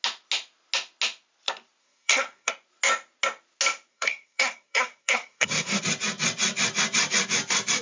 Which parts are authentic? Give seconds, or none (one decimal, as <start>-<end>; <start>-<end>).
0.0-1.8; 2.5-3.9; 5.8-7.8